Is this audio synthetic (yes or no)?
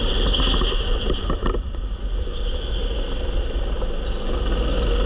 no